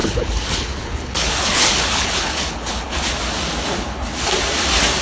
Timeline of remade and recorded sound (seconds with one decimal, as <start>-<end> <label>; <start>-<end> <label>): 0.0-3.0 remade; 3.0-5.0 recorded